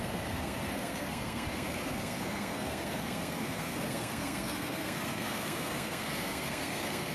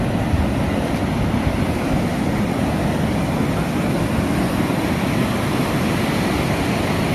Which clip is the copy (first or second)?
first